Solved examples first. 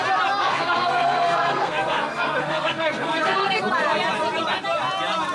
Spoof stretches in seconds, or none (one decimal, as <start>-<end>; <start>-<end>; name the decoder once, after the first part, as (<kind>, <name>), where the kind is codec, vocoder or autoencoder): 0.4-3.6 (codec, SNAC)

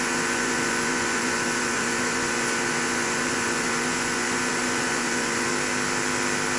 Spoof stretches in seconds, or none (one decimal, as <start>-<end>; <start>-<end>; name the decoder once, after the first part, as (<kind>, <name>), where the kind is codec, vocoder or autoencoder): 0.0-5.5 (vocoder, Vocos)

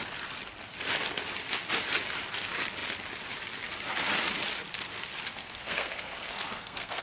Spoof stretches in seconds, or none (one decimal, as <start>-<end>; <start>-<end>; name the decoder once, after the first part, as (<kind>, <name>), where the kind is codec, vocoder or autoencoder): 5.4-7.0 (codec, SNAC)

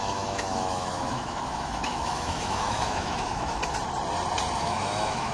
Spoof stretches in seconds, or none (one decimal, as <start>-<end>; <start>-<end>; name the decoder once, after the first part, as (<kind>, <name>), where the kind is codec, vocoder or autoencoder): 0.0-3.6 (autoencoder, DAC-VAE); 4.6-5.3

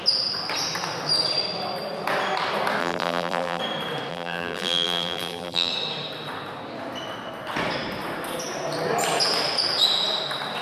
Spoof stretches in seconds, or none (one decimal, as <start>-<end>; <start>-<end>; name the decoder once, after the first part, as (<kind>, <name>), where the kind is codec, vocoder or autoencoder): 2.8-3.6 (vocoder, BigVGAN v2); 4.1-5.7